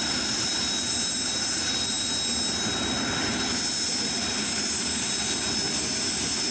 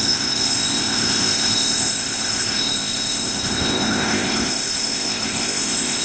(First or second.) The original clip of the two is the first